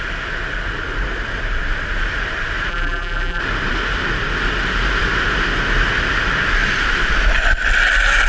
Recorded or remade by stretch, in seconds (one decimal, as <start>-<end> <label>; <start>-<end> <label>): 0.0-2.7 recorded; 2.7-3.4 remade; 3.4-8.3 recorded